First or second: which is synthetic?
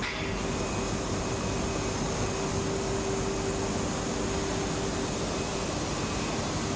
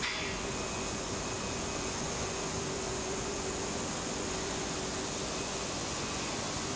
second